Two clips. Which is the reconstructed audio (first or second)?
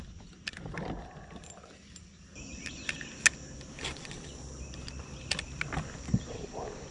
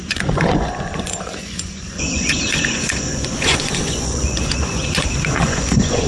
second